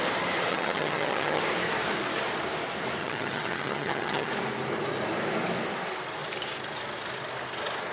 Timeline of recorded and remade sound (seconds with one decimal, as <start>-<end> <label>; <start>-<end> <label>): 0.0-0.5 recorded; 0.5-1.4 remade; 1.4-3.0 recorded; 3.0-4.3 remade; 4.3-7.9 recorded